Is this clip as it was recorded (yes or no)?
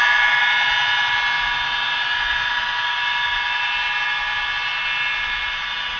yes